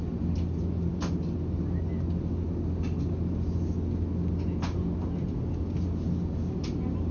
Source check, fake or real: real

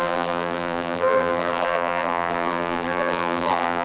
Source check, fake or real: fake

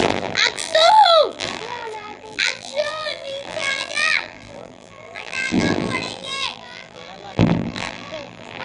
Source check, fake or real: fake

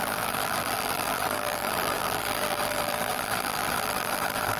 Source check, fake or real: fake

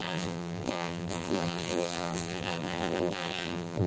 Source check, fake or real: fake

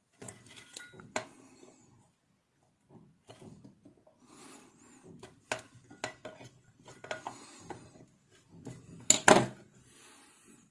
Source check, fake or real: real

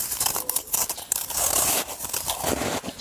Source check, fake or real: fake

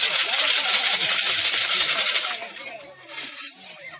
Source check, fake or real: fake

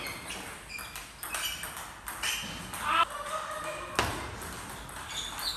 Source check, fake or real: real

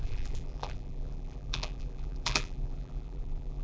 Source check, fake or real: fake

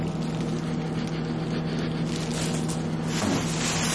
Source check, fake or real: real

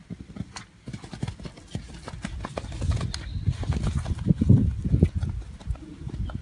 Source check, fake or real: fake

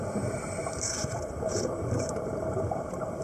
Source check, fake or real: fake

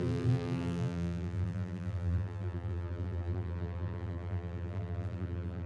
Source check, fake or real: fake